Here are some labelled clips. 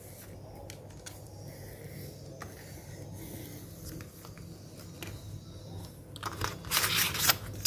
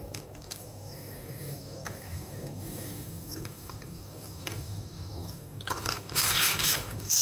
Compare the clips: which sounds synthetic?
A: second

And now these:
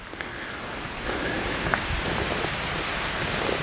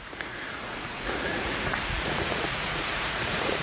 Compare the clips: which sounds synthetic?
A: second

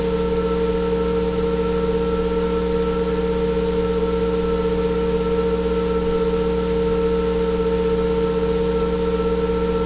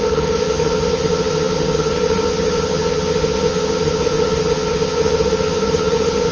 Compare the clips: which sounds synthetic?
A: second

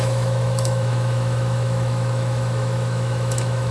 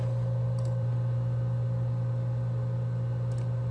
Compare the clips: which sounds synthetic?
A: first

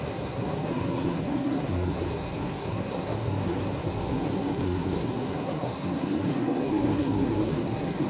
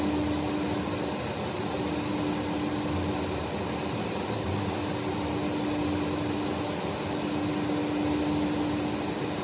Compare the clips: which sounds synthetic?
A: first